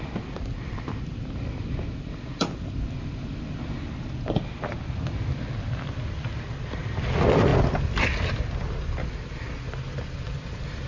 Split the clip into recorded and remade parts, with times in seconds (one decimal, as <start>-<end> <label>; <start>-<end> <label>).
0.0-10.9 recorded